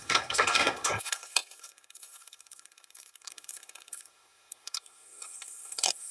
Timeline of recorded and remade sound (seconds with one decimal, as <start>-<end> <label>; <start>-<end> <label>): 0.0-6.1 remade

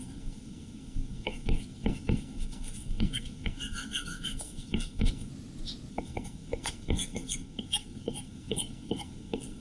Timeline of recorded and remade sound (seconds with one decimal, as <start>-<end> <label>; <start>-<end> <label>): 0.0-5.3 remade; 5.3-5.9 recorded; 5.9-9.6 remade